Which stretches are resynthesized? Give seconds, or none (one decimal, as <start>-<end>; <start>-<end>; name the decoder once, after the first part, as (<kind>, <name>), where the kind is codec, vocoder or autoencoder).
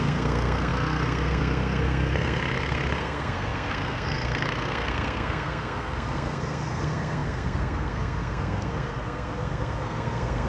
0.0-10.5 (codec, SNAC)